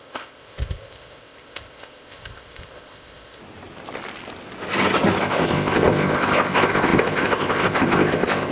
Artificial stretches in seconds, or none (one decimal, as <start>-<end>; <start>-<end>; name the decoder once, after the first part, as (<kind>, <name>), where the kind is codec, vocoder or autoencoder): 0.0-3.4 (codec, ZipCodec); 5.2-8.5